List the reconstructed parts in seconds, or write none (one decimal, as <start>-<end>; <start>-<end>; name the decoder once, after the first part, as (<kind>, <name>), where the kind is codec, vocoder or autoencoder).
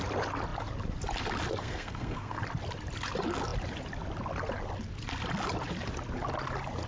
1.6-2.4 (codec, SNAC)